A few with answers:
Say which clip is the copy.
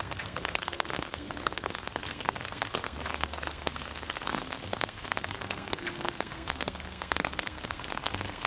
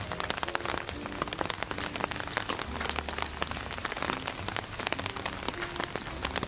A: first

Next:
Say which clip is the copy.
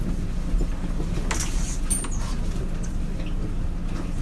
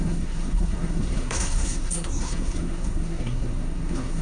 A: second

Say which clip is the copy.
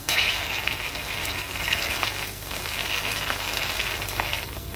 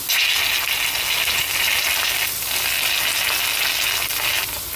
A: first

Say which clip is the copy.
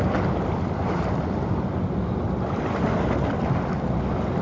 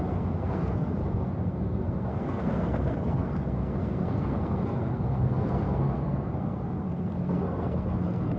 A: second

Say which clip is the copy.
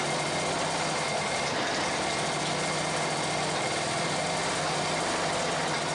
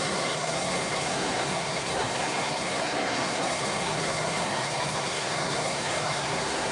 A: second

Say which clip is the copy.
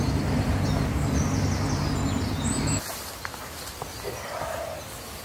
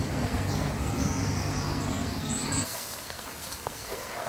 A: second